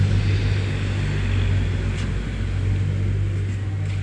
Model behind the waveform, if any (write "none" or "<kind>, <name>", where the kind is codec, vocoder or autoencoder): none